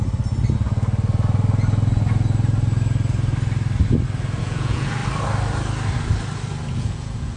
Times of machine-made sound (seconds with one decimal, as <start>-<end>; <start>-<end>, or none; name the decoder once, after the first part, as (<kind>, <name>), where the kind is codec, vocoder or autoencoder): 4.4-5.0 (vocoder, Vocos); 6.7-7.4